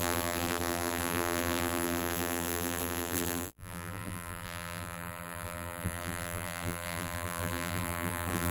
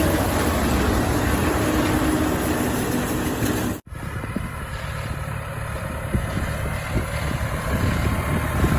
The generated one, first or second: first